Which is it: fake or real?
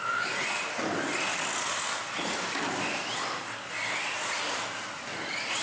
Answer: real